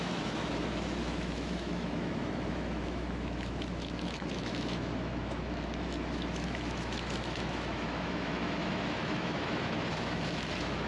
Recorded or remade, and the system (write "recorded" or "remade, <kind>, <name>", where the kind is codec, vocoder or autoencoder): remade, autoencoder, DAC-VAE